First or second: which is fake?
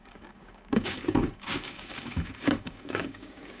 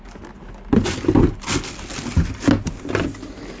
first